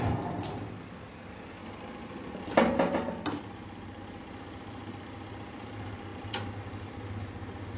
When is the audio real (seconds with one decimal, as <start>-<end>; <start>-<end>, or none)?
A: 0.0-7.8